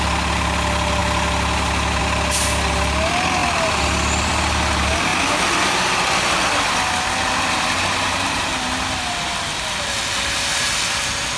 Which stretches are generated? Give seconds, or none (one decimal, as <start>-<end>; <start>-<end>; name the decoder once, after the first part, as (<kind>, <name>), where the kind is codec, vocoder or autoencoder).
none